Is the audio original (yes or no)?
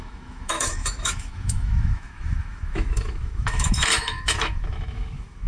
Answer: no